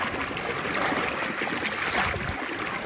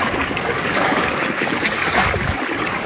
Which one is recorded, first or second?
first